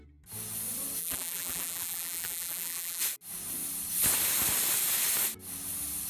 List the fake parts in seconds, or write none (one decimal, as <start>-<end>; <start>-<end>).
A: 1.0-3.0